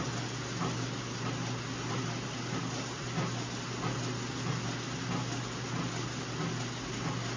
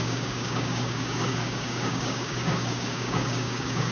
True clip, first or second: first